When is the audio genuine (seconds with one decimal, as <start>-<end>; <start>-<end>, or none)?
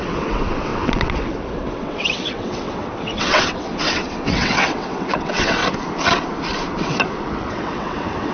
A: 5.6-6.7